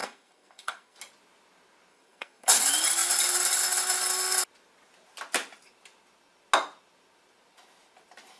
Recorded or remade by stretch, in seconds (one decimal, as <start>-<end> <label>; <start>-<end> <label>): 0.0-1.0 remade; 1.0-1.9 recorded; 1.9-2.6 remade; 2.6-8.4 recorded